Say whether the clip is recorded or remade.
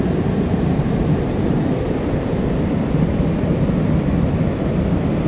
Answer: recorded